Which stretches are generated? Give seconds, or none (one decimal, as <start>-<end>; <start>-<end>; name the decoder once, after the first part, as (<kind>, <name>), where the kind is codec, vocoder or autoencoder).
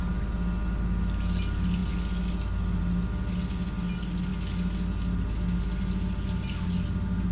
none